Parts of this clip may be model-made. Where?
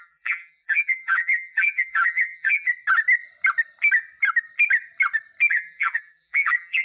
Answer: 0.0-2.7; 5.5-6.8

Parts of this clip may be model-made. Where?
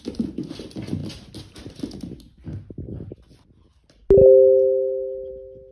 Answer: none